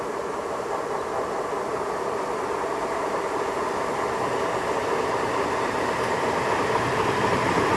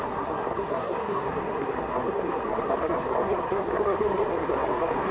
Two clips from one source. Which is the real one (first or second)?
first